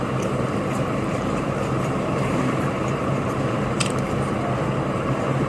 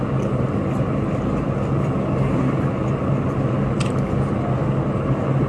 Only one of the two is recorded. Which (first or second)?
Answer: second